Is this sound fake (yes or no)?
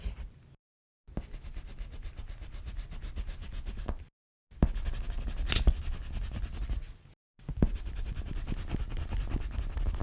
no